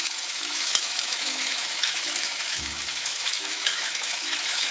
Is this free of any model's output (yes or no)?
no